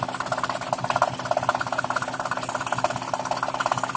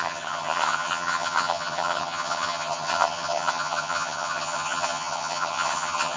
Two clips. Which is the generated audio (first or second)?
second